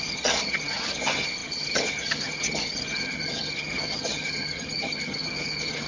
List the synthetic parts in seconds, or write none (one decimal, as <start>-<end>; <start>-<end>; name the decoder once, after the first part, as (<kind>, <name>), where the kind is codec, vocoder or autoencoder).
0.0-5.9 (vocoder, HiFi-GAN)